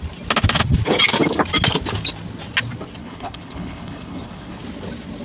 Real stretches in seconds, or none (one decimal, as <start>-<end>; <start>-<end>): 0.0-3.0; 4.6-5.2